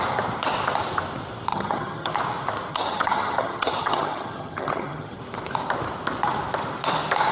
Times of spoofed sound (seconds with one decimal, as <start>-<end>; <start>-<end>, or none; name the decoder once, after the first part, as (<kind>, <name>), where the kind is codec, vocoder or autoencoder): 1.5-2.1 (vocoder, HiFi-GAN); 2.7-5.2